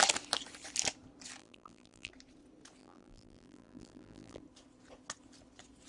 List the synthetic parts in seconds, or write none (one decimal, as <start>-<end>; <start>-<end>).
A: 1.4-2.1; 2.8-4.4